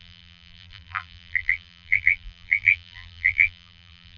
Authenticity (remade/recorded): remade